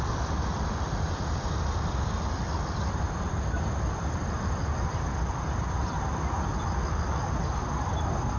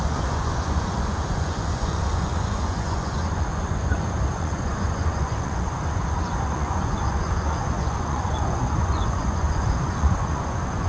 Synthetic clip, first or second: second